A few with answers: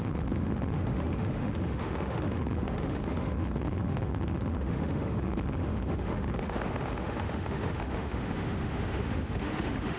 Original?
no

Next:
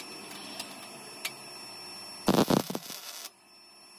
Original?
yes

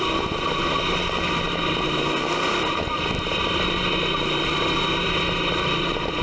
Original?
yes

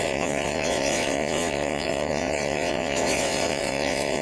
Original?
no